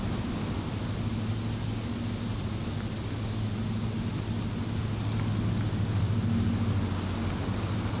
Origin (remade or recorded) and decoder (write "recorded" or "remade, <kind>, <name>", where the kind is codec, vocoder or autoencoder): recorded